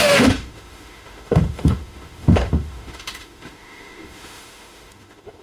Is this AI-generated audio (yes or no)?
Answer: yes